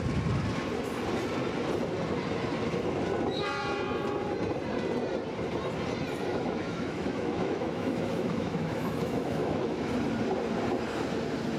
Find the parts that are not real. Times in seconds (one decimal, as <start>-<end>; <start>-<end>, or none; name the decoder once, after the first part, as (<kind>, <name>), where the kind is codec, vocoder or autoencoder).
6.3-9.9 (autoencoder, DAC-VAE)